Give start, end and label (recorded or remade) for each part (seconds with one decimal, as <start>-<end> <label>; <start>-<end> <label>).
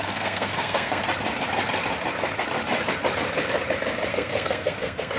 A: 0.0-1.0 remade; 1.0-4.1 recorded; 4.1-5.2 remade